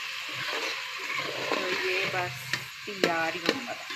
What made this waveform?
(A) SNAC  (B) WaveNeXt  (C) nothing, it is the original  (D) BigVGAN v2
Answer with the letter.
C